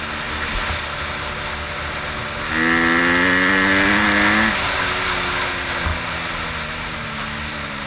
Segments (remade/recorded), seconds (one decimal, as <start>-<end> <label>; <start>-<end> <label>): 0.0-7.9 recorded